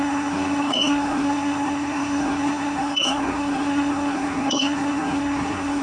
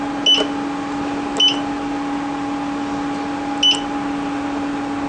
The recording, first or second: second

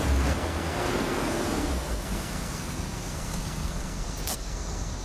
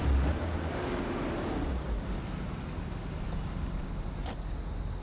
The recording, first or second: second